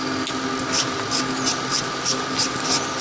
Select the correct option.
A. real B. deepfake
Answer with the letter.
A